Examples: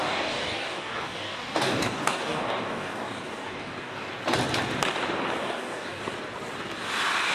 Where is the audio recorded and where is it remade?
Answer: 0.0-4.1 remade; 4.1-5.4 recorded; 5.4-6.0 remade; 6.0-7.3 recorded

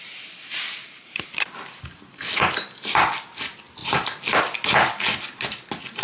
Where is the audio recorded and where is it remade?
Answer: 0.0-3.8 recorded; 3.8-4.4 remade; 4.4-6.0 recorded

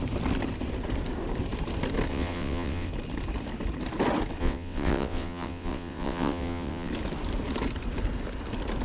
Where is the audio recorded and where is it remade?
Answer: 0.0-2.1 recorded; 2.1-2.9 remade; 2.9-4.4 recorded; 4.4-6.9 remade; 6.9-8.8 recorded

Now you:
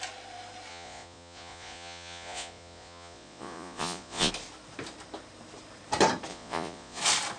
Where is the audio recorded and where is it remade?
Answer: 0.0-0.7 recorded; 0.7-4.3 remade; 4.3-6.3 recorded; 6.3-7.0 remade; 7.0-7.4 recorded

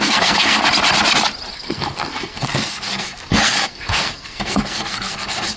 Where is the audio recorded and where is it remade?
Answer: 0.0-0.6 remade; 0.6-1.5 recorded; 1.5-5.6 remade

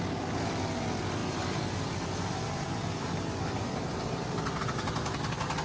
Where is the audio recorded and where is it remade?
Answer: 0.0-5.6 recorded